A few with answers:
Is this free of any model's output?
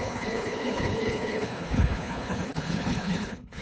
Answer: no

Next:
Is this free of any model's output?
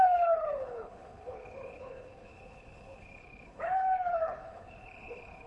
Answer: no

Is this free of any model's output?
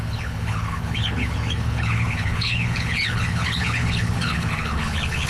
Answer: no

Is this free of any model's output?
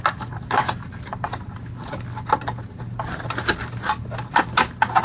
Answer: yes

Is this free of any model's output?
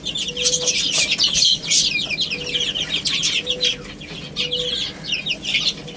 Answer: yes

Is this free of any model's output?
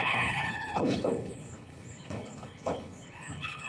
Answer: no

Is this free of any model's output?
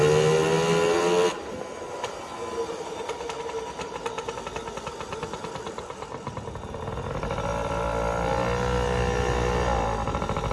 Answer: yes